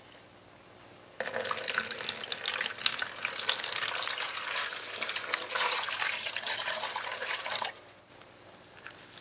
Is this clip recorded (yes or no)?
yes